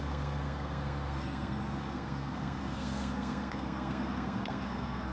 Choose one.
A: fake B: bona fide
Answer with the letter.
A